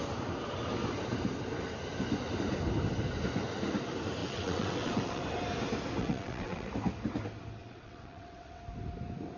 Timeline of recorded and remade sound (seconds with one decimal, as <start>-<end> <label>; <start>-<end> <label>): 0.0-4.2 recorded; 4.2-5.2 remade; 5.2-6.0 recorded; 6.0-6.7 remade; 6.7-7.6 recorded; 7.6-8.6 remade; 8.6-9.4 recorded